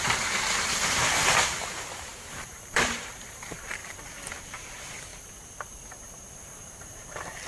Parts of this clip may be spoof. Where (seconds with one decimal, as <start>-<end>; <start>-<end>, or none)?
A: 0.0-3.8; 4.5-7.5